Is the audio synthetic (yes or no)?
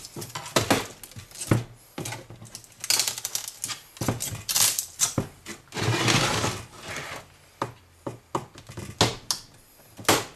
no